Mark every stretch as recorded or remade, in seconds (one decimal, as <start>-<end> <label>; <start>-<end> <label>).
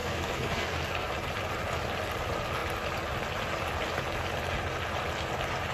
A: 0.0-1.1 remade; 1.1-5.7 recorded